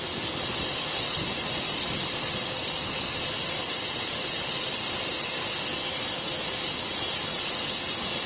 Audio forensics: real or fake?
real